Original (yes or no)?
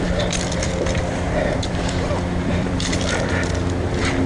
no